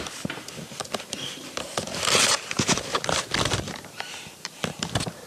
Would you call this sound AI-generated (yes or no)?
yes